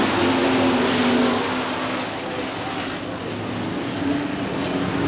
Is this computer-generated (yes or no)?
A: no